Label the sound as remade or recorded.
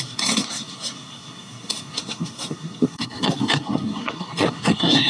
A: remade